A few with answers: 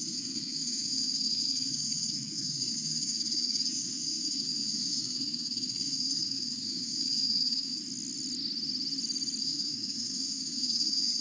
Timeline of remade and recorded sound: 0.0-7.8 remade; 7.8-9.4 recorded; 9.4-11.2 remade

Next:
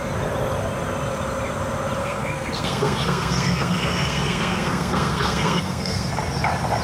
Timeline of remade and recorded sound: 0.0-2.0 recorded; 2.0-6.1 remade; 6.1-6.8 recorded

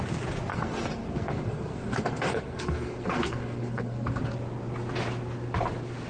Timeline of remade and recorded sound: 0.0-0.5 recorded; 0.5-4.2 remade; 4.2-6.1 recorded

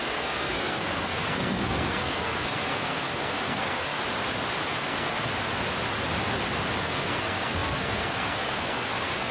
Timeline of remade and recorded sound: 0.0-4.0 remade; 4.0-4.8 recorded; 4.8-5.3 remade; 5.3-6.8 recorded; 6.8-9.3 remade

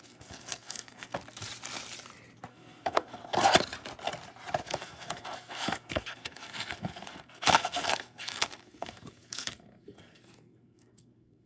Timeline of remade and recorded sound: 0.0-1.1 remade; 1.1-2.5 recorded; 2.5-3.2 remade; 3.2-4.6 recorded; 4.6-11.5 remade

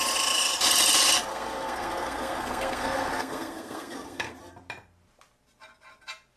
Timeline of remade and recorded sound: 0.0-1.3 recorded; 1.3-4.4 remade; 4.4-6.4 recorded